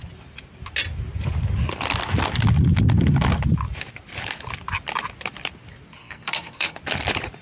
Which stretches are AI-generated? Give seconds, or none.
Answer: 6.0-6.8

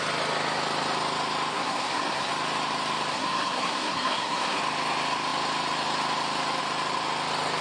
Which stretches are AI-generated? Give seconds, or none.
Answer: 1.5-2.3; 3.1-4.6

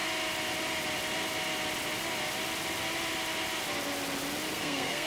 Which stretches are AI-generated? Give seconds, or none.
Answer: 4.5-5.1

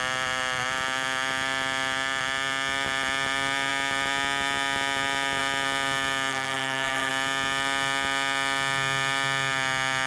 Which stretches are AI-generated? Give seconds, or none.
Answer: 6.3-7.1